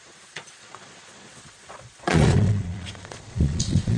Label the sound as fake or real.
fake